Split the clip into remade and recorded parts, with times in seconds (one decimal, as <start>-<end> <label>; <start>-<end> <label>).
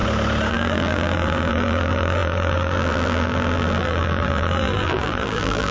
0.0-0.5 recorded; 0.5-5.7 remade